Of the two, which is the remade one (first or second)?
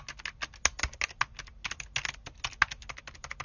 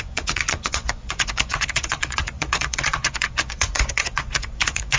second